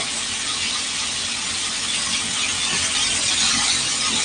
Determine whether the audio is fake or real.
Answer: real